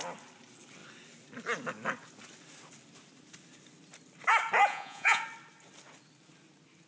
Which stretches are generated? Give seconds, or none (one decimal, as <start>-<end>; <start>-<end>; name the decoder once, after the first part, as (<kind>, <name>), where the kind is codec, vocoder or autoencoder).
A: 4.7-5.2 (vocoder, Vocos)